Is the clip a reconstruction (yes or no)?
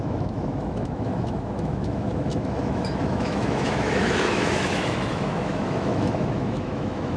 yes